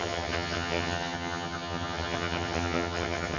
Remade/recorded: remade